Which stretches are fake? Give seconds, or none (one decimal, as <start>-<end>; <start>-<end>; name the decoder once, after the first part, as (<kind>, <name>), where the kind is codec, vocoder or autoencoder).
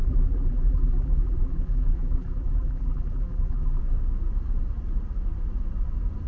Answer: 0.0-3.8 (vocoder, BigVGAN v2)